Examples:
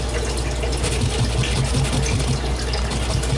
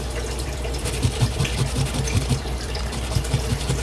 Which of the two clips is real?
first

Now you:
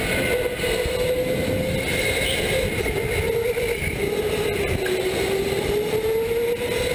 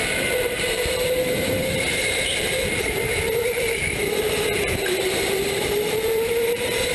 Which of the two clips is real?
first